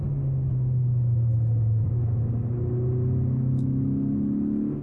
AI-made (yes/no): no